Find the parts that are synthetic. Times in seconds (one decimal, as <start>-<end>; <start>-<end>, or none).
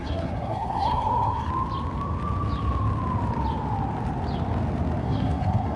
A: 0.0-1.5; 5.0-5.8